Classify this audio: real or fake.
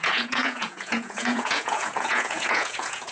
fake